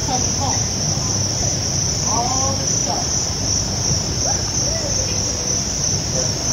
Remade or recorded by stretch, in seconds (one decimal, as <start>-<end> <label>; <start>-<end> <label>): 0.0-1.9 remade; 1.9-2.8 recorded; 2.8-5.1 remade; 5.1-6.5 recorded